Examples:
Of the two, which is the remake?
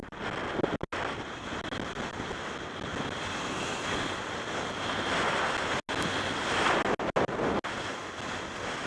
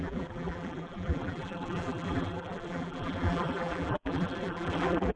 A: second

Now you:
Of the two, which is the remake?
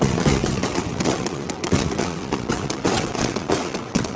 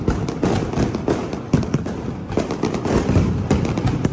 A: first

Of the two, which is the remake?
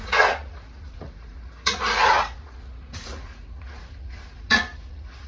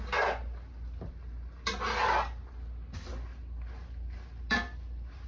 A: first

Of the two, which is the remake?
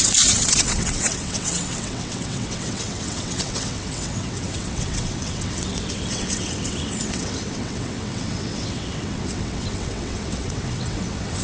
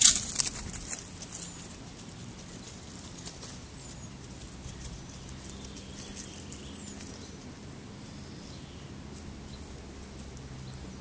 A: first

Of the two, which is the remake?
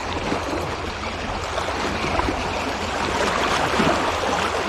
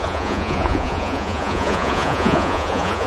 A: second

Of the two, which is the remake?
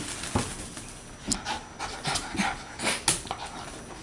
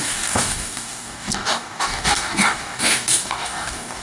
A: second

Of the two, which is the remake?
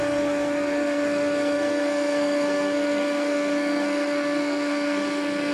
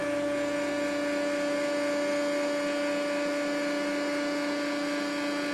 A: first